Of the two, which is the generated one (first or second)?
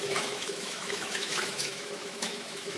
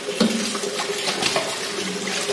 first